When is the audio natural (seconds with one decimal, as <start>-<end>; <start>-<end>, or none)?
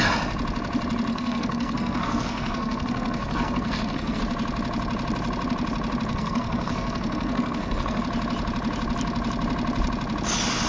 0.0-1.1; 4.2-6.1; 8.0-10.7